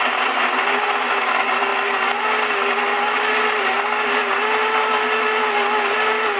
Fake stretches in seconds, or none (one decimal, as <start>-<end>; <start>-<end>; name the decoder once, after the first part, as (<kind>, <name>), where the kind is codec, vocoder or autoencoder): none